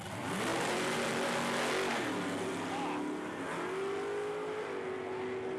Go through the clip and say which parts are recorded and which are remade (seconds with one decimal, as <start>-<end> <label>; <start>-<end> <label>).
0.0-0.5 recorded; 0.5-1.1 remade; 1.1-5.6 recorded